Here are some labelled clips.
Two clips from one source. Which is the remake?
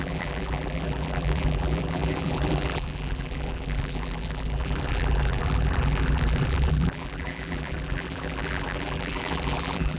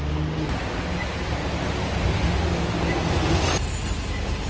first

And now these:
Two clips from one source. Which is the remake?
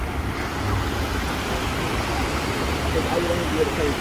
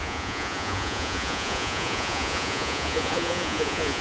second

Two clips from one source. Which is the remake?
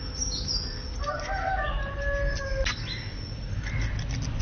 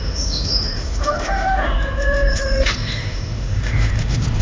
second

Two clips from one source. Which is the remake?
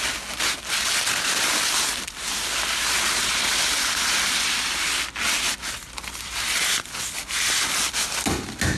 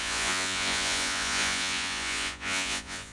second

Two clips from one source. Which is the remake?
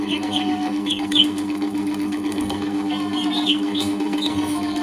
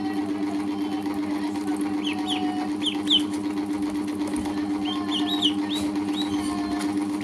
first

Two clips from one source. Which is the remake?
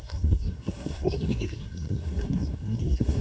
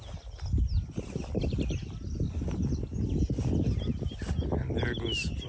first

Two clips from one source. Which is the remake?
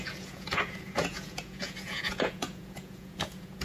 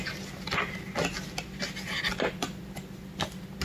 first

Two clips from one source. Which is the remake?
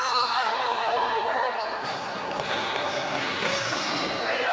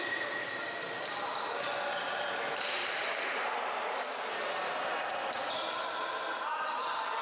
first